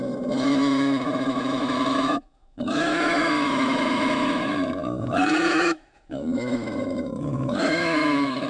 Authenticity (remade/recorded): remade